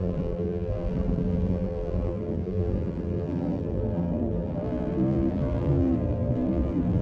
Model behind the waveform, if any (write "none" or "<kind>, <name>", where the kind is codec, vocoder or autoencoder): vocoder, BigVGAN v2